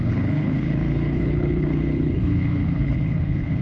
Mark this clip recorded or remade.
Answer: remade